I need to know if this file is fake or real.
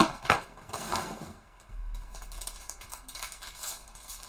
fake